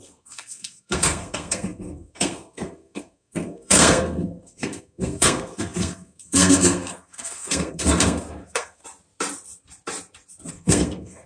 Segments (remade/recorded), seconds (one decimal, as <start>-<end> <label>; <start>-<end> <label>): 0.0-8.8 remade; 8.8-10.5 recorded; 10.5-11.3 remade